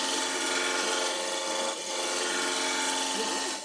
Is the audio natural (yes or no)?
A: yes